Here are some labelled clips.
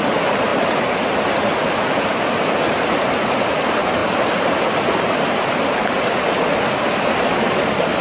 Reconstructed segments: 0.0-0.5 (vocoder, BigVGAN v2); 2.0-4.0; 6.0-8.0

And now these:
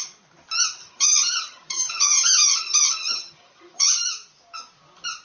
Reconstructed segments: 0.8-3.9 (vocoder, HiFi-GAN)

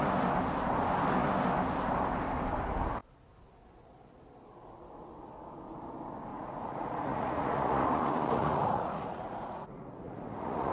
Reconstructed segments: 6.3-10.7 (vocoder, Vocos)